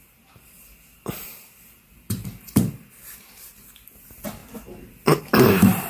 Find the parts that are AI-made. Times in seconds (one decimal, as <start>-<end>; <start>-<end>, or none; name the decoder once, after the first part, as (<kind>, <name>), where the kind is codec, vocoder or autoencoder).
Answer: none